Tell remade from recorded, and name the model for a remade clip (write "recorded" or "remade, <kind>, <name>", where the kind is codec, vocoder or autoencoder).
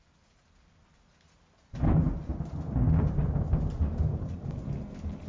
recorded